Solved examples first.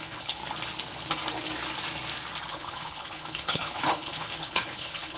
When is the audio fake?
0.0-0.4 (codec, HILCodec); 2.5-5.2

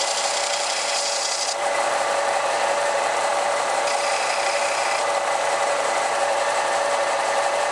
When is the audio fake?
0.0-7.7 (vocoder, BigVGAN v2)

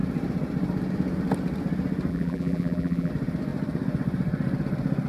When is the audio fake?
2.1-3.1 (vocoder, BigVGAN v2)